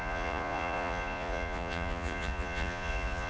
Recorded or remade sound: remade